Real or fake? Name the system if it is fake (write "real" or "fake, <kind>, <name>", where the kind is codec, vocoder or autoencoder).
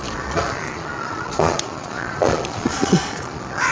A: fake, vocoder, Vocos